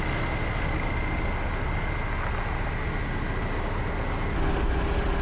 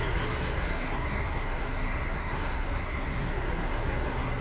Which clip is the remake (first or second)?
second